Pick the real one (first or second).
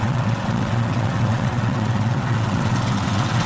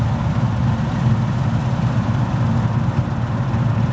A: second